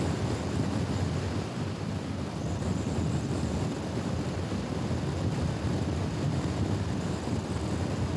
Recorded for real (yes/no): yes